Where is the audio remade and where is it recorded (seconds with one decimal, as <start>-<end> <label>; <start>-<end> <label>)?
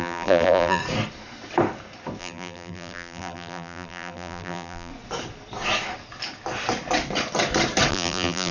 0.0-0.8 remade; 0.8-2.2 recorded; 2.2-4.9 remade; 4.9-7.9 recorded; 7.9-8.5 remade